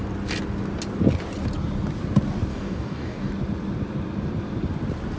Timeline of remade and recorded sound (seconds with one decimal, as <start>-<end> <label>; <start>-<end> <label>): 0.0-2.5 recorded; 2.5-3.3 remade; 3.3-5.2 recorded